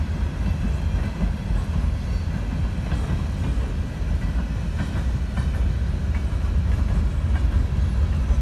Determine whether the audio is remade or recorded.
recorded